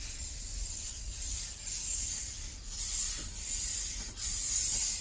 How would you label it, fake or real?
real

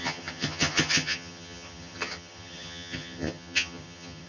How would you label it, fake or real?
fake